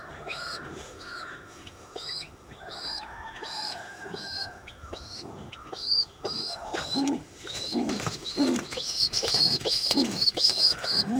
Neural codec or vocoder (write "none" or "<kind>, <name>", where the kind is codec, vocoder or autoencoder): autoencoder, DAC-VAE